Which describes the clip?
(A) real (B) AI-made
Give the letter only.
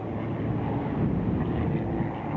A